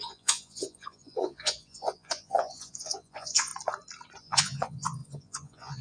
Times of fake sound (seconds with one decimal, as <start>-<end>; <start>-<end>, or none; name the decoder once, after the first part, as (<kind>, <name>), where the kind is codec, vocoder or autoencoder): 0.0-3.5 (vocoder, Vocos); 4.2-5.8